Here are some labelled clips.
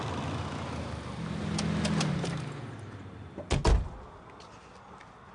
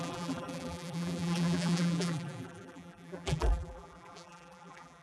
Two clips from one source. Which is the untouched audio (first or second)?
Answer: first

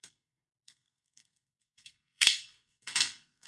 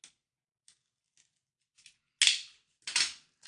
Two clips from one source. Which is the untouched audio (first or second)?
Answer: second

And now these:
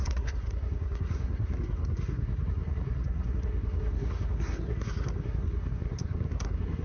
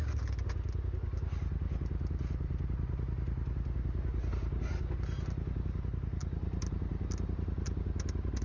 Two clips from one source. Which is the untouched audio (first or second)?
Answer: second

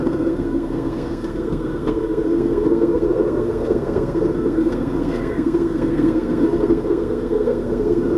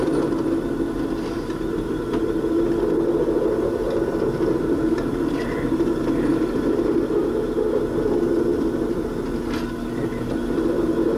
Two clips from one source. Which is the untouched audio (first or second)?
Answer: second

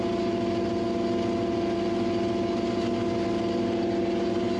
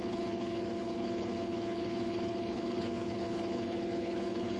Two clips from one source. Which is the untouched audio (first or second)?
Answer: first